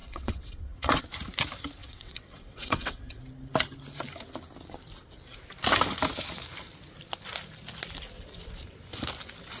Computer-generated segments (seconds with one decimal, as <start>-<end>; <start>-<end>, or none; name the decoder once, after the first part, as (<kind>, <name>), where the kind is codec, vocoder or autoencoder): 0.0-1.0 (vocoder, WaveNeXt); 1.8-3.2